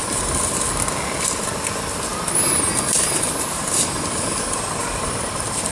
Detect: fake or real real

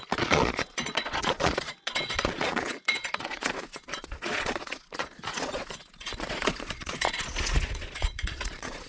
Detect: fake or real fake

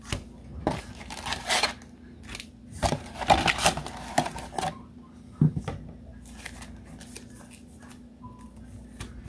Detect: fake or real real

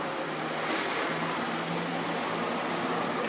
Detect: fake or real real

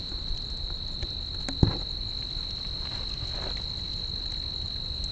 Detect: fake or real real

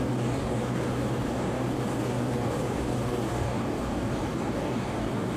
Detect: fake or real fake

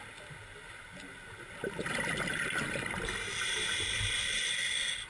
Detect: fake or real real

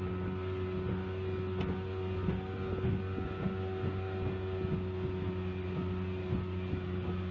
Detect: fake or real real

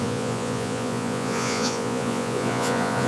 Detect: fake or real fake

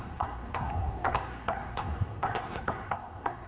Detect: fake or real fake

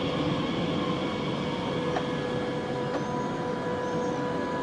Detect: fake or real real